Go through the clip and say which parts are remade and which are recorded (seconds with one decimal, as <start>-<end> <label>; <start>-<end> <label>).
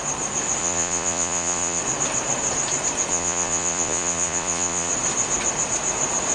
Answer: 0.0-0.6 recorded; 0.6-1.8 remade; 1.8-3.1 recorded; 3.1-4.9 remade; 4.9-6.3 recorded